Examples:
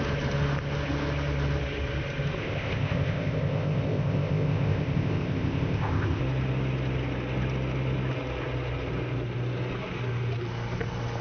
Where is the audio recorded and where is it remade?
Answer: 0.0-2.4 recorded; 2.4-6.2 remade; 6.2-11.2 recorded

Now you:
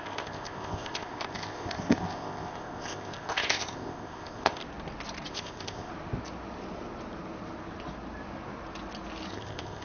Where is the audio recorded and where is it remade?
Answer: 0.0-4.6 remade; 4.6-5.3 recorded; 5.3-5.9 remade; 5.9-9.3 recorded; 9.3-9.8 remade

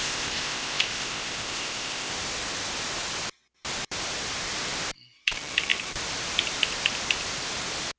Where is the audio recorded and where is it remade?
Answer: 0.0-2.1 remade; 2.1-8.0 recorded

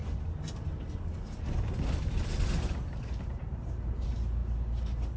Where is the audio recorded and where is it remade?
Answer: 0.0-5.2 recorded

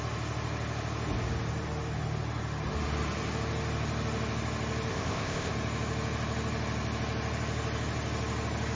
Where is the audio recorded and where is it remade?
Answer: 0.0-4.9 recorded; 4.9-5.5 remade; 5.5-8.8 recorded